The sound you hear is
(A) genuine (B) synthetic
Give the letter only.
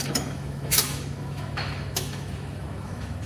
B